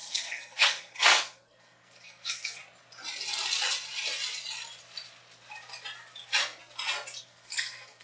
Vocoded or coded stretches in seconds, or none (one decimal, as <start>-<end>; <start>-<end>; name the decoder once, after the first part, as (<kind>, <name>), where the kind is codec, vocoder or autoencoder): 0.0-2.6 (codec, SNAC); 7.2-8.0